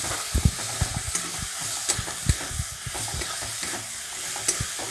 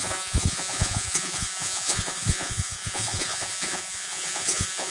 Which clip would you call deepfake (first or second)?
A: second